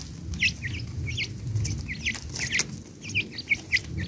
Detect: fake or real real